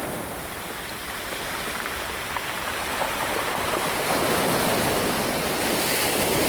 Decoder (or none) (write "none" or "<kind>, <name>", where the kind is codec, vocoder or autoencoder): vocoder, BigVGAN v2